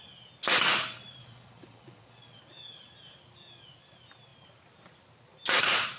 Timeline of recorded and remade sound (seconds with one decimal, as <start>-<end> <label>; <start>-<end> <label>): 0.0-1.2 recorded; 1.2-2.4 remade; 2.4-6.0 recorded